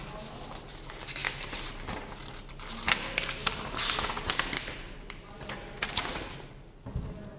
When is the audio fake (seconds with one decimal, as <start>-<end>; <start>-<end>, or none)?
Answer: 1.2-2.1; 3.4-6.5